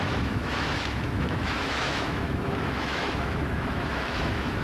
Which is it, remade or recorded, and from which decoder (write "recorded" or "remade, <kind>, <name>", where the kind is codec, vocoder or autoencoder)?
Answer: remade, autoencoder, DAC-VAE